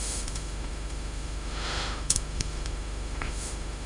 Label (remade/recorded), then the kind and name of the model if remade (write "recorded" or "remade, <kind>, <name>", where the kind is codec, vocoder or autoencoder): remade, autoencoder, DAC-VAE